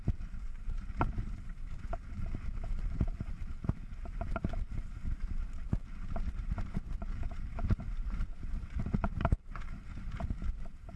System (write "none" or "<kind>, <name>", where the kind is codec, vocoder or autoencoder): vocoder, BigVGAN v2